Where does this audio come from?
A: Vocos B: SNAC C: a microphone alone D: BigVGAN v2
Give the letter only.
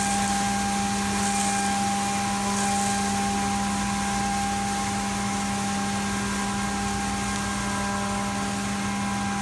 C